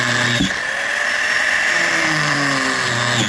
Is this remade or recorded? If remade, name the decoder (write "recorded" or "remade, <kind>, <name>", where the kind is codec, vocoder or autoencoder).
recorded